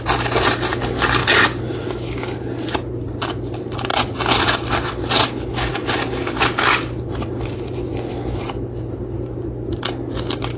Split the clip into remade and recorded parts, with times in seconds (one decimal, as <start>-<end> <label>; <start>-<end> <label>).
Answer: 0.0-10.6 recorded